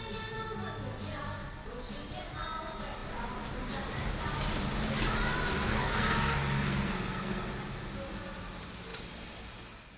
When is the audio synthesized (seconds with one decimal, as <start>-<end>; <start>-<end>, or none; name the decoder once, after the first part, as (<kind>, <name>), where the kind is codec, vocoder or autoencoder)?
5.7-7.5 (codec, SNAC)